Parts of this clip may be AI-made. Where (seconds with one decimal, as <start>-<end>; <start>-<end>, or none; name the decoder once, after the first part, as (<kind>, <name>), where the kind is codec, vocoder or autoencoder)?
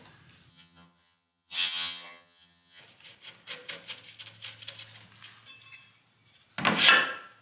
0.5-2.8 (vocoder, HiFi-GAN)